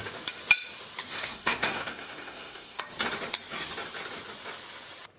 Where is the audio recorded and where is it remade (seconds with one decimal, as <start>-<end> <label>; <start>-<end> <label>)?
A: 0.0-1.1 recorded; 1.1-2.8 remade; 2.8-5.2 recorded